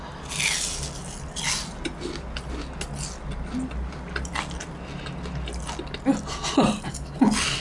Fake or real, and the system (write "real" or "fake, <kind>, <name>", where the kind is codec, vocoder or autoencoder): real